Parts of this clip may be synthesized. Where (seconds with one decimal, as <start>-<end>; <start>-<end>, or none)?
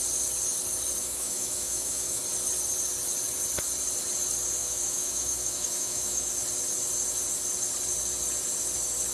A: 1.0-2.2; 4.6-6.3